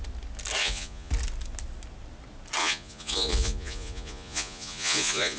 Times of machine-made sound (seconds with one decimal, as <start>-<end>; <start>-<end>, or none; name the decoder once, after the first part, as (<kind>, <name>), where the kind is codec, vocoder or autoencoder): 0.6-1.1 (vocoder, Vocos); 2.6-5.4